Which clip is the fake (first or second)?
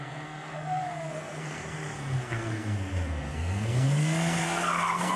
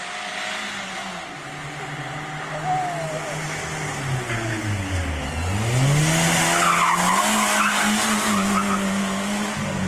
first